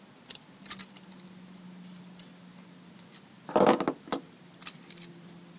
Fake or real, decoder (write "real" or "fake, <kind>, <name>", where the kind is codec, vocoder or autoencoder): real